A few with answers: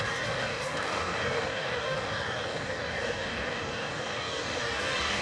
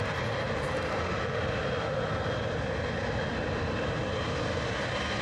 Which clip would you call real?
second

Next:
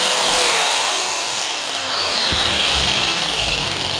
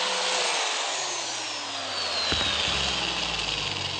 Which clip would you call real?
second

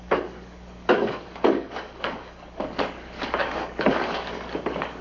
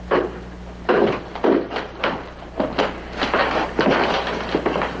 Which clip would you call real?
second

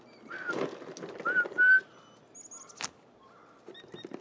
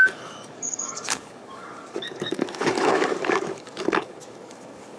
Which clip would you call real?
first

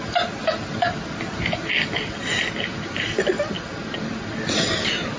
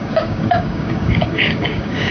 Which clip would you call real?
first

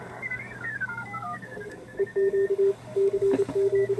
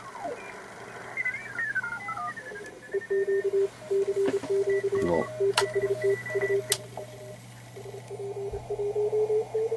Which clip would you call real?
second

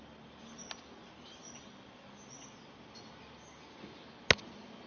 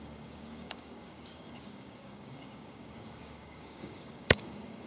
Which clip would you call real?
first